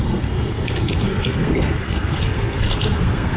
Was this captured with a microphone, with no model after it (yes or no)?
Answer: no